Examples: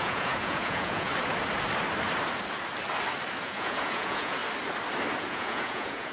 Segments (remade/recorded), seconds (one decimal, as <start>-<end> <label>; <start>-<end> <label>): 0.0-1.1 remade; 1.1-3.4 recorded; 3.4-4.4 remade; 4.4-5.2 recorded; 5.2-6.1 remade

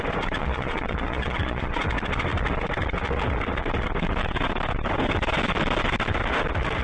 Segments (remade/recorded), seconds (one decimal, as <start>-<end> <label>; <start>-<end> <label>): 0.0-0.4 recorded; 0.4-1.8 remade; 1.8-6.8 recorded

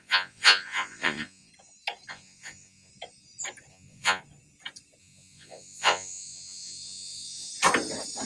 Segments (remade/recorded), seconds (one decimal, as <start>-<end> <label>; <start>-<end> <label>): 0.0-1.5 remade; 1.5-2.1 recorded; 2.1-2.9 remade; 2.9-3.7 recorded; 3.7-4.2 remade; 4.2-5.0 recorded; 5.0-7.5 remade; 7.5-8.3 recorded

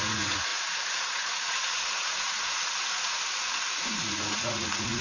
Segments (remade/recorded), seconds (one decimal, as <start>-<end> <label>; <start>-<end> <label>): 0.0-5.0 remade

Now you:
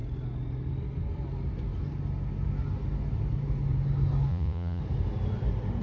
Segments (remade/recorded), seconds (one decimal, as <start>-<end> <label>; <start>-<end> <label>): 0.0-4.3 recorded; 4.3-4.8 remade; 4.8-5.8 recorded